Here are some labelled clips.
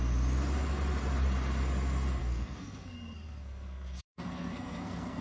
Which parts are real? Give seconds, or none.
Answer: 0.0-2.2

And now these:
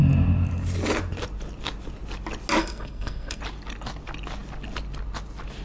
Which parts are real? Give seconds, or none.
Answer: 0.0-2.6; 3.4-5.6

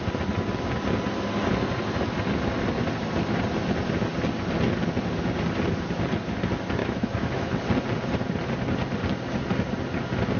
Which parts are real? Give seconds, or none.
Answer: 0.0-6.8; 7.5-10.4

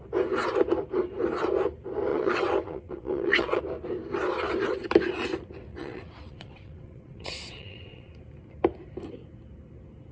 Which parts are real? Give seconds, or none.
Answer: 0.0-2.1; 3.6-5.7; 8.1-10.1

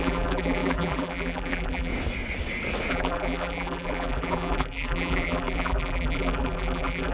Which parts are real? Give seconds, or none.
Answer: 1.9-2.9

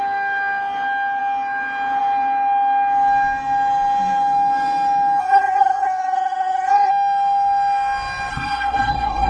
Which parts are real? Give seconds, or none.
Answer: 0.0-5.2; 6.9-8.3